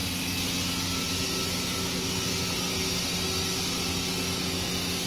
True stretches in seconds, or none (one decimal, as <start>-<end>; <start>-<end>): 0.0-5.1